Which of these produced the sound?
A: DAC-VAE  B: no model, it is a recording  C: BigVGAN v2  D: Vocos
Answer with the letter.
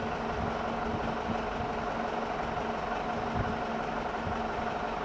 B